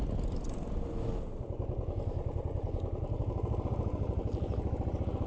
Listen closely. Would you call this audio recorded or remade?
recorded